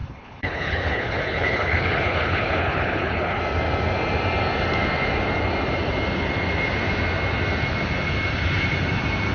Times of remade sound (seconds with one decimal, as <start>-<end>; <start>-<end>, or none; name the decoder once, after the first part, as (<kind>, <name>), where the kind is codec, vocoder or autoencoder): 0.0-3.4 (codec, HILCodec)